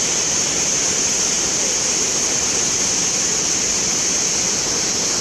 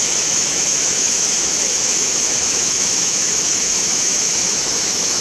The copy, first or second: second